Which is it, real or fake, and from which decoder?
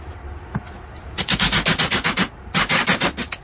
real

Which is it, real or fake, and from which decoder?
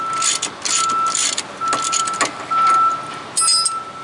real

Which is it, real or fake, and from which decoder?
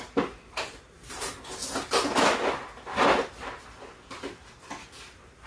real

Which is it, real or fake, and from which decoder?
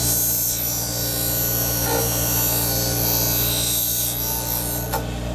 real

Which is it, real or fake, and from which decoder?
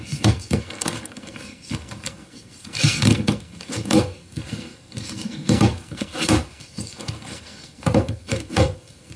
fake, codec, SNAC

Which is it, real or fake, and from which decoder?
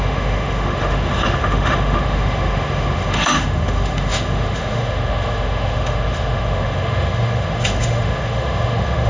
fake, autoencoder, DAC-VAE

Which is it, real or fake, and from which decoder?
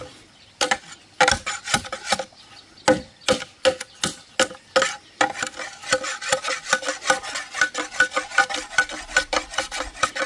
real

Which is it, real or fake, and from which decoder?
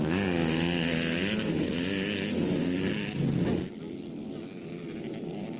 real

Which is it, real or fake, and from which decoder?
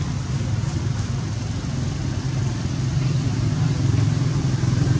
real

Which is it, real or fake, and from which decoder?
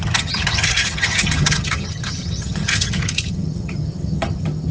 fake, vocoder, HiFi-GAN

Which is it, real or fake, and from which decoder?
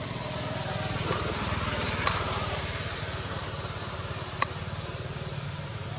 real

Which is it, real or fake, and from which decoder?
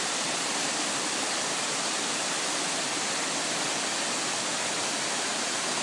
fake, vocoder, BigVGAN v2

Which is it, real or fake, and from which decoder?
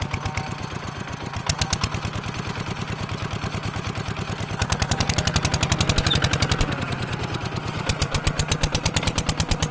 real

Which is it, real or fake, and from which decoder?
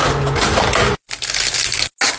real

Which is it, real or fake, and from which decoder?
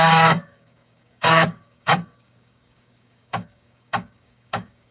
fake, codec, DAC